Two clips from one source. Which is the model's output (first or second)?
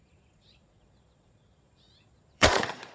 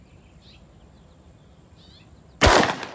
first